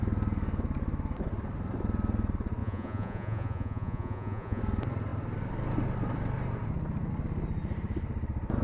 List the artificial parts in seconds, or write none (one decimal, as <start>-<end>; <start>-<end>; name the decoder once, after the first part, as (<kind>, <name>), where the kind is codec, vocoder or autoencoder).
2.6-4.6 (vocoder, Vocos)